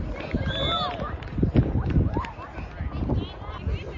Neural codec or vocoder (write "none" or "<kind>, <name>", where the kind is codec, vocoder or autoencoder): none